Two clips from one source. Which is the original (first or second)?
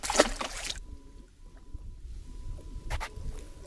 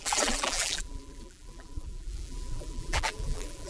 first